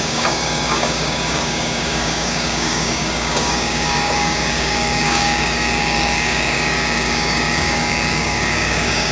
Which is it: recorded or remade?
remade